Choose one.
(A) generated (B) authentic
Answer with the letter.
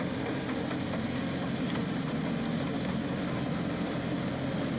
B